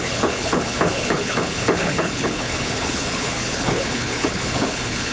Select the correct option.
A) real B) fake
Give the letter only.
B